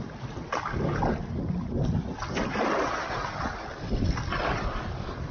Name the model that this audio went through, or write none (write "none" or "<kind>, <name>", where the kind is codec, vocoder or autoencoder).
none